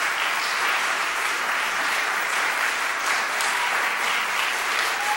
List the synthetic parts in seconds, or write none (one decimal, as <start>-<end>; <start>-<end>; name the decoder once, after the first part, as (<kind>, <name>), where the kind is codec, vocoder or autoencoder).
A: 0.5-2.5 (vocoder, BigVGAN v2); 2.9-4.1